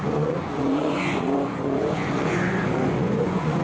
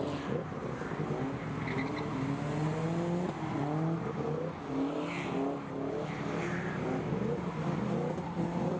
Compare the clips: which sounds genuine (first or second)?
second